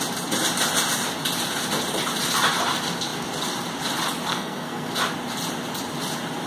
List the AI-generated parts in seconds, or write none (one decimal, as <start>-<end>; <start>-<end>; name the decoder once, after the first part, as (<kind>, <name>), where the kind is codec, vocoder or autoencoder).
4.3-4.9 (codec, SNAC)

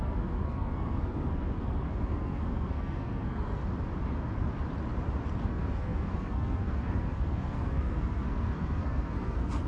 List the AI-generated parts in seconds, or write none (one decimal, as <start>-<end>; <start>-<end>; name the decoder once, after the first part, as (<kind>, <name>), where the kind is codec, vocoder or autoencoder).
0.0-3.6 (codec, SNAC); 5.4-9.7

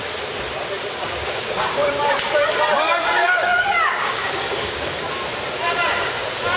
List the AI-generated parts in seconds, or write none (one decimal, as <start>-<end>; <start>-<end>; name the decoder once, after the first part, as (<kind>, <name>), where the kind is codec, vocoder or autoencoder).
1.0-1.9 (codec, DAC); 3.2-5.0

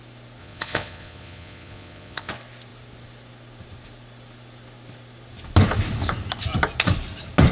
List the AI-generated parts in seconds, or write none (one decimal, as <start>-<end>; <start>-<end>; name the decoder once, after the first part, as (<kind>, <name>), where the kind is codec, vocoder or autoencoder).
0.4-2.3 (vocoder, Vocos)